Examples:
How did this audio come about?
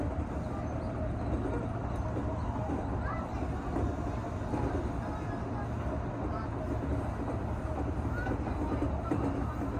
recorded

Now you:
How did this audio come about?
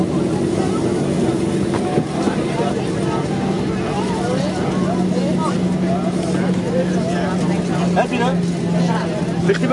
recorded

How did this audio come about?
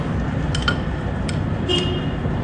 recorded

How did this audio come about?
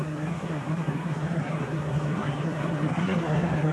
remade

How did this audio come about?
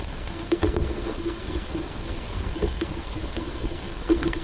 remade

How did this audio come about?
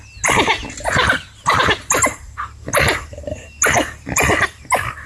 recorded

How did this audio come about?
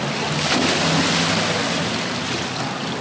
recorded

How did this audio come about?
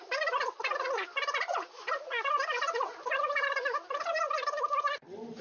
recorded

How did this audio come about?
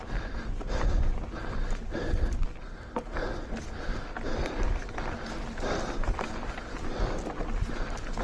recorded